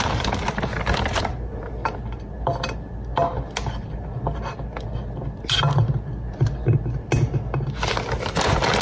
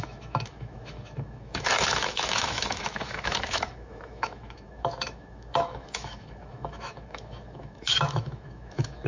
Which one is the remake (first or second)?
second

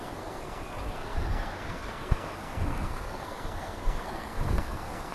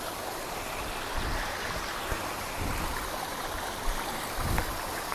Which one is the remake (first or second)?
first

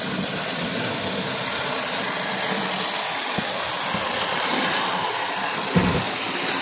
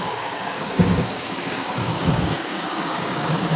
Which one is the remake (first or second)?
second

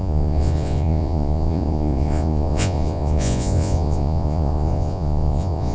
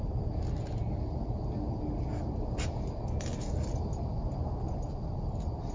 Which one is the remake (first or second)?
first